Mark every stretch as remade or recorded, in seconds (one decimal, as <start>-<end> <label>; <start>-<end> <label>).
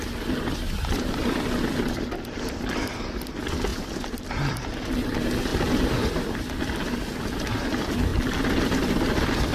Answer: 0.0-3.7 remade; 3.7-4.3 recorded; 4.3-5.5 remade; 5.5-7.6 recorded; 7.6-8.1 remade; 8.1-8.6 recorded; 8.6-9.5 remade